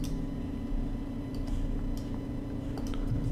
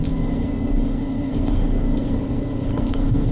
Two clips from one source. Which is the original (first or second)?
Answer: first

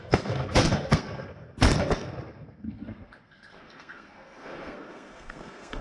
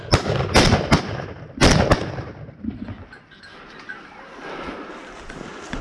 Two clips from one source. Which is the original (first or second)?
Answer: second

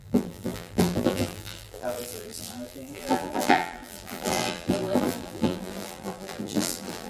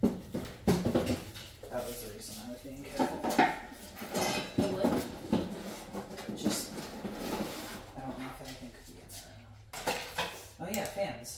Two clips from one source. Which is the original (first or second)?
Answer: second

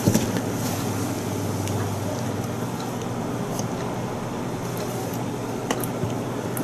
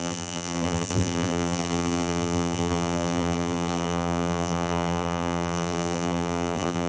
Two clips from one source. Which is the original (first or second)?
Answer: first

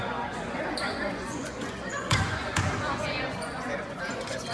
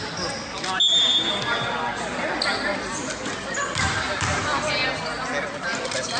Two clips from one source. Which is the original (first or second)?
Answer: second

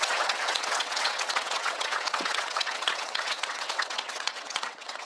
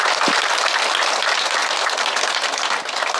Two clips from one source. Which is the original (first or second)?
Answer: second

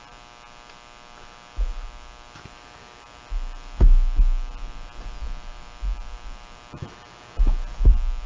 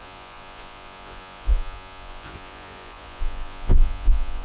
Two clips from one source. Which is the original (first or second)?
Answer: first